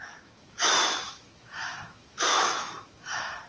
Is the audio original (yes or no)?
no